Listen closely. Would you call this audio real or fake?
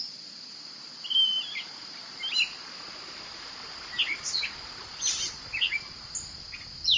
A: real